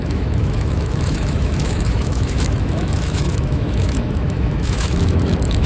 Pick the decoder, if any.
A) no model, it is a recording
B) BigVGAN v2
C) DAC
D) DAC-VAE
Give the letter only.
D